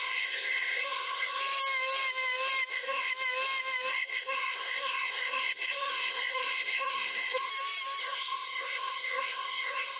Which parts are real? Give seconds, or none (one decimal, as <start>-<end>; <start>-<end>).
1.4-2.7; 3.1-3.9; 7.5-8.0